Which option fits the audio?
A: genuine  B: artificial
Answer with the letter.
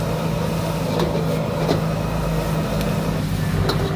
A